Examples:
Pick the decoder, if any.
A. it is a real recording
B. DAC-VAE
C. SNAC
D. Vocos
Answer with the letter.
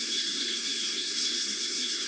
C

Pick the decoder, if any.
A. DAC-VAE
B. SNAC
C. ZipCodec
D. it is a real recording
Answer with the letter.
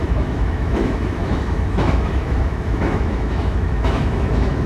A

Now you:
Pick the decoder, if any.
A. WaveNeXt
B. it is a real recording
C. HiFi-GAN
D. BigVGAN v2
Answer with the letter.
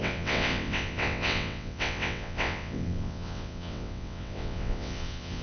A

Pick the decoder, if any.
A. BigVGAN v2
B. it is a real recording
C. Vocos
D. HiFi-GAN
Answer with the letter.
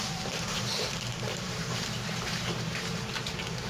A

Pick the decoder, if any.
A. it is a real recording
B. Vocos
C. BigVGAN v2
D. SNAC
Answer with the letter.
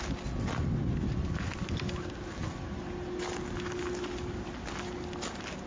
A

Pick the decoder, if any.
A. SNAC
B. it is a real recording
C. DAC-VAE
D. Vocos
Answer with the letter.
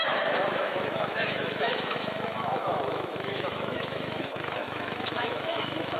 C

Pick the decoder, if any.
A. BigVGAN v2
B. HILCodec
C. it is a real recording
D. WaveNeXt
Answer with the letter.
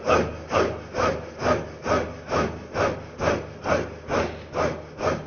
C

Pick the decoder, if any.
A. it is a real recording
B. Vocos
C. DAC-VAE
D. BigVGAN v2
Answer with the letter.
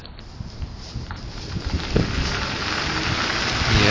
A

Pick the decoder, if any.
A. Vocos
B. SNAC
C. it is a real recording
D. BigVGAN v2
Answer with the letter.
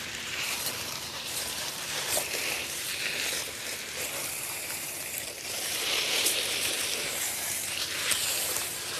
D